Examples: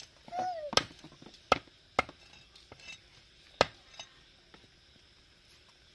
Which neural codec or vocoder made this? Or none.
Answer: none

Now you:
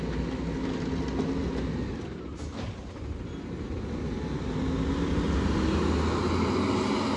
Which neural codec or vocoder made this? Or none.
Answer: none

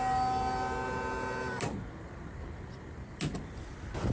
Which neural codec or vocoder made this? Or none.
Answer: none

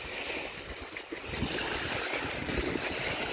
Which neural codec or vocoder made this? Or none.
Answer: none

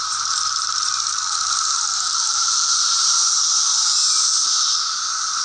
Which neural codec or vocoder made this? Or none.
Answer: vocoder, BigVGAN v2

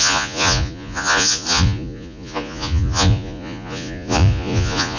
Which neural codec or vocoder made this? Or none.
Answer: vocoder, Vocos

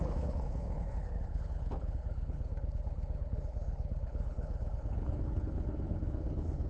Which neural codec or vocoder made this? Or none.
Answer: codec, HILCodec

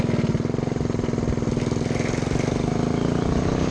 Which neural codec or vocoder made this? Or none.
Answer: none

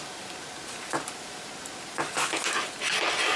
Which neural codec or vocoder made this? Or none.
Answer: none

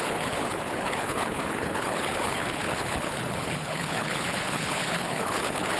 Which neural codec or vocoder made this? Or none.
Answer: codec, HILCodec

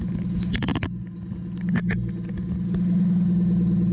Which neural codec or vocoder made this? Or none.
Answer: none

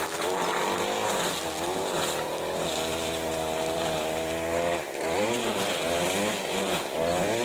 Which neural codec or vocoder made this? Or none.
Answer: none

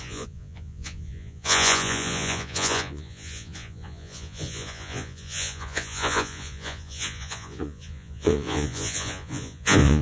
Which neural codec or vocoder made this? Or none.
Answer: vocoder, Vocos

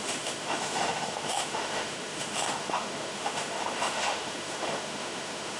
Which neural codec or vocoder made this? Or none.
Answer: autoencoder, DAC-VAE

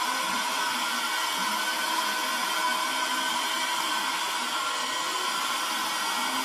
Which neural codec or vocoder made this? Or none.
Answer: none